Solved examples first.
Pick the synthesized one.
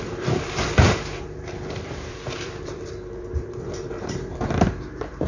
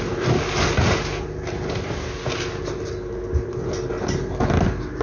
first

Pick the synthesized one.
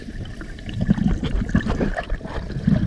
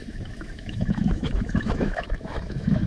second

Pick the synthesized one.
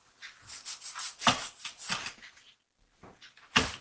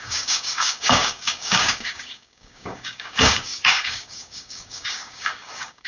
second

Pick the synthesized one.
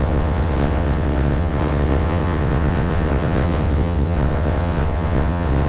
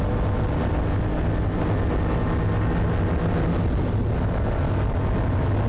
first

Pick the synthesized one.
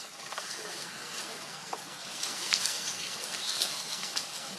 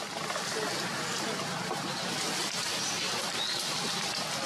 first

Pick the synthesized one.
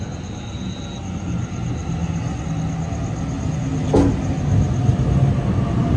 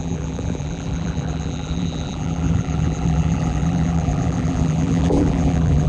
second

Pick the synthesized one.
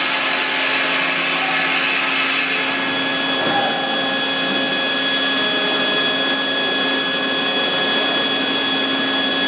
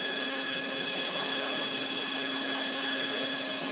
second